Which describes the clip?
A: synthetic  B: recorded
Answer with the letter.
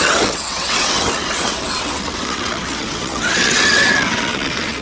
A